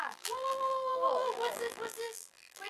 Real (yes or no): no